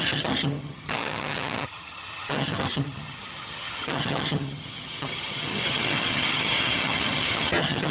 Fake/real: fake